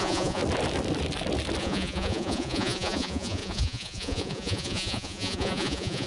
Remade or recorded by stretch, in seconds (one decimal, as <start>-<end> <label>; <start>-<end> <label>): 0.0-0.4 remade; 0.4-1.6 recorded; 1.6-6.1 remade